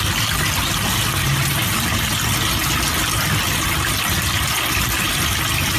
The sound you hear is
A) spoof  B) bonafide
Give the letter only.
B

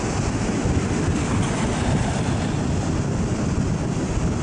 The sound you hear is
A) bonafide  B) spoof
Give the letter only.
A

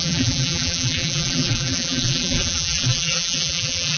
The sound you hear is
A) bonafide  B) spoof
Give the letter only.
B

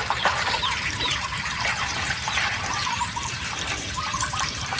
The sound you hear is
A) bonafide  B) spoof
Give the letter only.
B